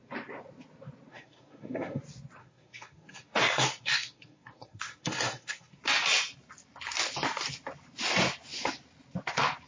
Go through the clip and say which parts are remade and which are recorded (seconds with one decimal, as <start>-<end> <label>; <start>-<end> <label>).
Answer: 0.0-1.1 recorded; 1.1-2.0 remade; 2.0-2.4 recorded; 2.4-5.8 remade; 5.8-9.7 recorded